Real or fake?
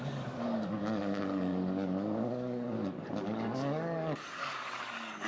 fake